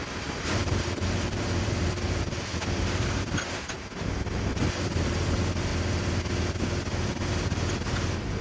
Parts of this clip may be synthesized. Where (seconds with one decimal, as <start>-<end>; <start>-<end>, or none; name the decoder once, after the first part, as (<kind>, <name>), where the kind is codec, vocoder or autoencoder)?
0.0-3.7 (vocoder, BigVGAN v2)